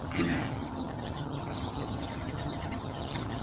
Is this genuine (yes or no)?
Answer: no